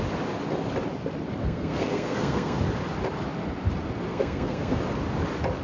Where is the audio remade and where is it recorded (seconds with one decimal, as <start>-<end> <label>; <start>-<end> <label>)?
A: 0.0-1.4 recorded; 1.4-2.6 remade; 2.6-4.1 recorded; 4.1-4.8 remade; 4.8-5.6 recorded